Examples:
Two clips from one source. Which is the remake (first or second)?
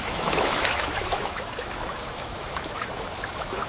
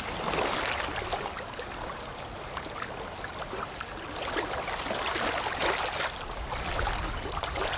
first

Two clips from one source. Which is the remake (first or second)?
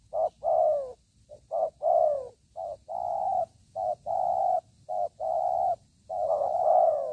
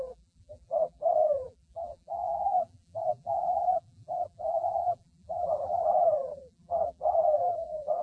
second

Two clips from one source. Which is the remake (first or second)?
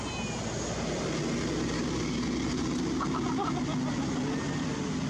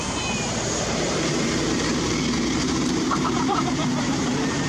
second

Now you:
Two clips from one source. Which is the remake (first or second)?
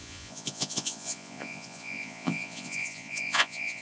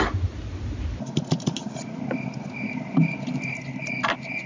first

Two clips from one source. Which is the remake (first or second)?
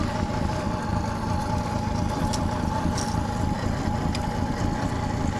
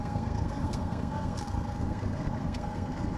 second